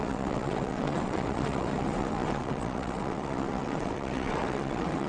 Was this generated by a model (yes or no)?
yes